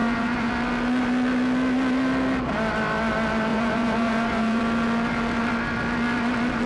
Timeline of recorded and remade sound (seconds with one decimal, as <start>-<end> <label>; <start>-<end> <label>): 0.0-0.5 remade; 0.5-3.5 recorded; 3.5-4.6 remade; 4.6-6.7 recorded